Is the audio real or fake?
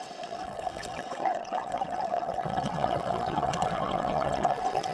fake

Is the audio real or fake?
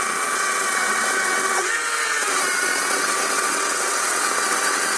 fake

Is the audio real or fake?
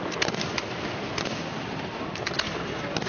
real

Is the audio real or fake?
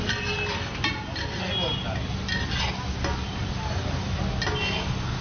real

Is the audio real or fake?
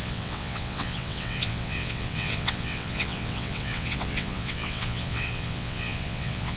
fake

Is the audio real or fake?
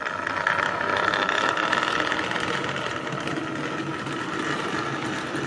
real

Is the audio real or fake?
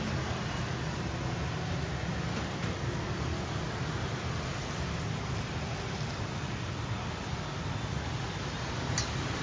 real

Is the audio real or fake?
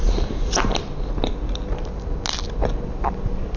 real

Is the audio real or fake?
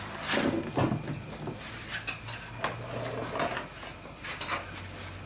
real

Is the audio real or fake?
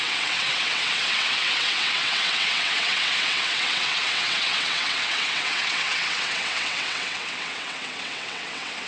fake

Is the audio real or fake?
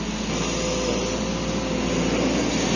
real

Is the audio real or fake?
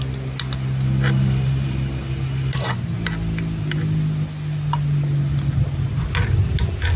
real